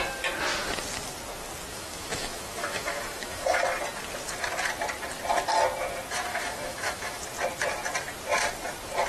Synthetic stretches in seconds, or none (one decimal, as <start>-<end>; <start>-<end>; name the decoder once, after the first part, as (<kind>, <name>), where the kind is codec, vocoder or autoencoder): 1.7-3.6 (autoencoder, DAC-VAE); 6.3-7.2